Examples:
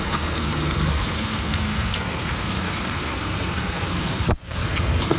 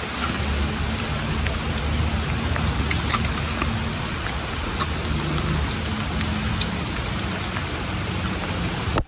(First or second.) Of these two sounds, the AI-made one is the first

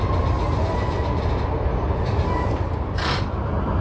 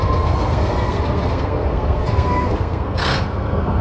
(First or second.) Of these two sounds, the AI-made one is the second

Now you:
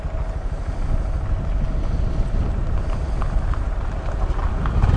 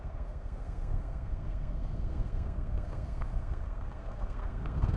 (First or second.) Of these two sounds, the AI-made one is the second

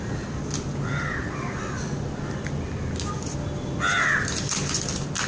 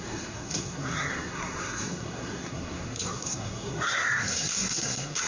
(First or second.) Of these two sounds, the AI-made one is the second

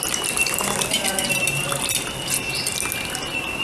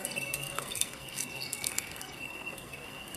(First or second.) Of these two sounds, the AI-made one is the second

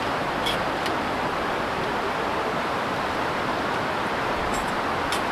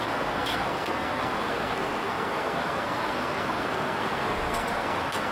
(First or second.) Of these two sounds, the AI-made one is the second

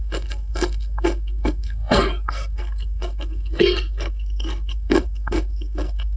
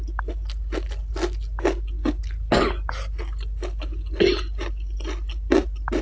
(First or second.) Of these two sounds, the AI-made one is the first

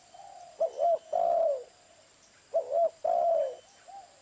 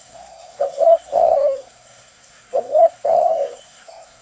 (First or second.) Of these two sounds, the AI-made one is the second